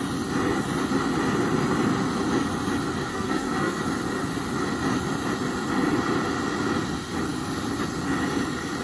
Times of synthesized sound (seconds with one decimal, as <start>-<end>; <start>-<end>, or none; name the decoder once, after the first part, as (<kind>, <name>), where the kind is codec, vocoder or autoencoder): 3.1-3.8 (codec, SNAC)